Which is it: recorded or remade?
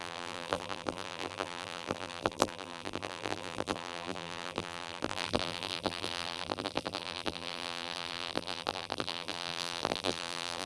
remade